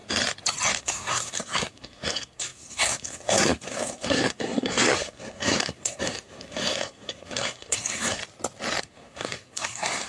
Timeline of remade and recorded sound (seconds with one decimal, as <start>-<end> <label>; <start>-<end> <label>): 0.0-0.8 recorded; 0.8-8.2 remade; 8.2-8.8 recorded; 8.8-10.1 remade